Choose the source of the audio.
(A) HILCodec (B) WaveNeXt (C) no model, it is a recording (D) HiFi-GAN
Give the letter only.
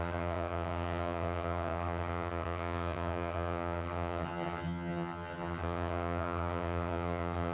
D